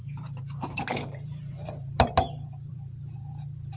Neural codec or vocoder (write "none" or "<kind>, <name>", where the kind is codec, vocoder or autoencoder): vocoder, BigVGAN v2